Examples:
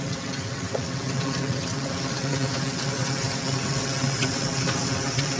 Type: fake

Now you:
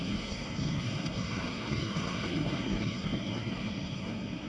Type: fake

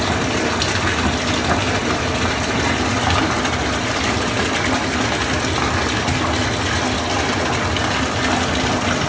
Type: real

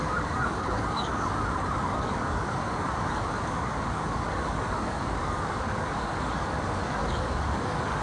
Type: fake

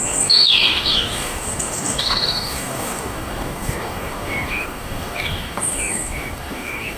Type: fake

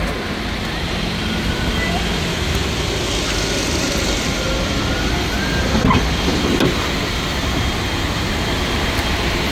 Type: real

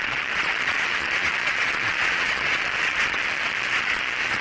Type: fake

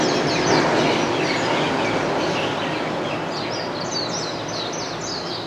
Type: real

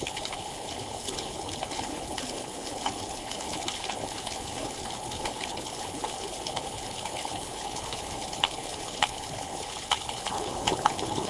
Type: fake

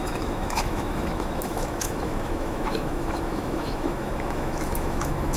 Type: fake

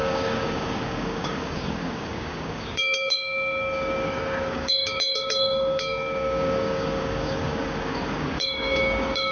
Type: fake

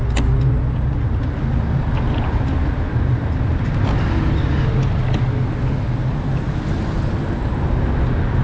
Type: real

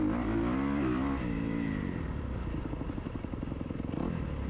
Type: real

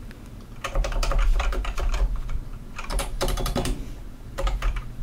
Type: fake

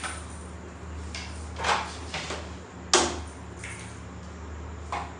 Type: real